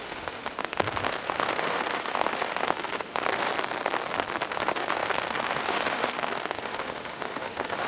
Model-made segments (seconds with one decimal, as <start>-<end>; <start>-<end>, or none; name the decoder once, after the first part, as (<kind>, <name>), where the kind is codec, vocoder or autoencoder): 0.0-3.5 (autoencoder, DAC-VAE); 4.5-7.9